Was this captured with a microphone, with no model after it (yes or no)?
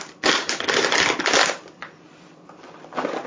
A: yes